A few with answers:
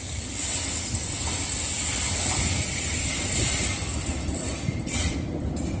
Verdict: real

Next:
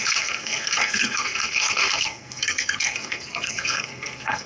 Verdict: fake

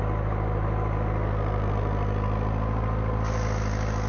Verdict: real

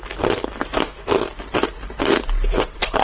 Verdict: real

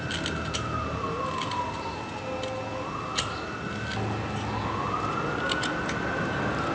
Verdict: real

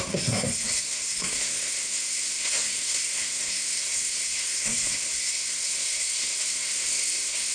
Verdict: fake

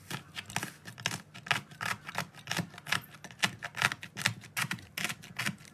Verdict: real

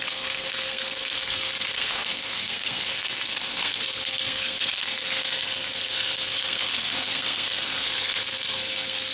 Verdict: fake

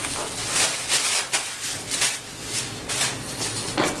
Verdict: real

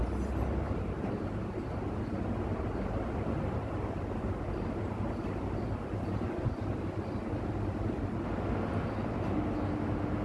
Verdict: real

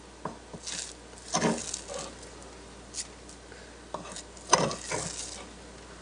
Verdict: real